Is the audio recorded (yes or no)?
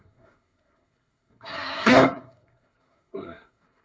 no